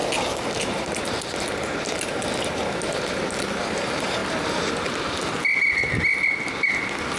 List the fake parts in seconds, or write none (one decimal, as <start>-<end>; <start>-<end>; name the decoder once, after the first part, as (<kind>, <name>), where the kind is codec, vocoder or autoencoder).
none